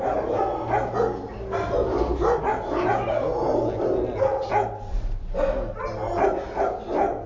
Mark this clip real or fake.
real